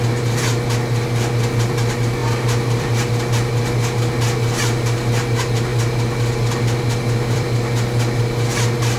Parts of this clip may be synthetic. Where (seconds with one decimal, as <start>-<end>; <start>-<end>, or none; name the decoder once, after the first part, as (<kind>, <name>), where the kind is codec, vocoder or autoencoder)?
2.2-3.1 (vocoder, BigVGAN v2); 5.7-8.2